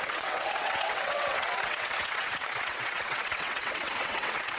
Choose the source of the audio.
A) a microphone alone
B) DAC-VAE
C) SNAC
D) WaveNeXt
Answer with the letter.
D